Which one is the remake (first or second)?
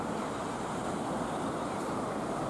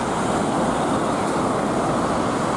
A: first